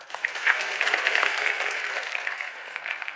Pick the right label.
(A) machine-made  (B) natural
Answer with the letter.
A